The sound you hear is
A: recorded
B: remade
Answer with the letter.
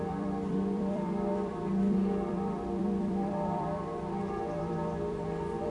B